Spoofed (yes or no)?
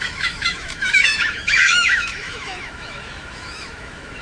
yes